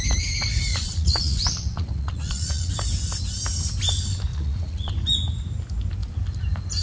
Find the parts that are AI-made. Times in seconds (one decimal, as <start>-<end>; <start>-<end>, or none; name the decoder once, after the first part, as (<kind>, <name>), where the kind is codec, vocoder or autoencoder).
0.7-2.7 (vocoder, Vocos); 4.3-4.9